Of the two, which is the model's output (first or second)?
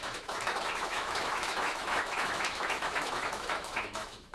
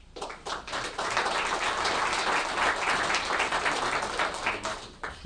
first